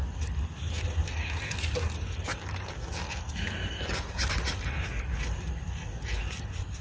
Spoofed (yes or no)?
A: no